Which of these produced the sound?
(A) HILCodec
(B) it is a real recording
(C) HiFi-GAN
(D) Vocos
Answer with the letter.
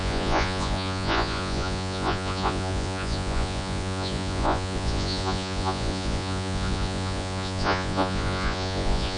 D